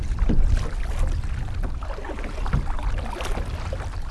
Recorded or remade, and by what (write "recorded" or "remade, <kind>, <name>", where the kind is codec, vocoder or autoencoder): recorded